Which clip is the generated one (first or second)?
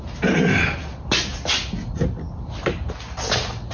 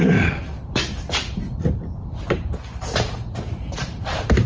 second